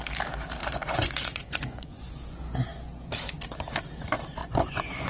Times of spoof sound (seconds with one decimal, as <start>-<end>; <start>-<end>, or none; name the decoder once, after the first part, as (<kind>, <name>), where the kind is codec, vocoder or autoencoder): 0.6-3.1 (vocoder, Vocos); 4.4-5.1